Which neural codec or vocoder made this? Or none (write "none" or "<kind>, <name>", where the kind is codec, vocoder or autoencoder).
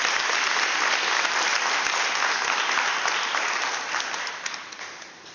none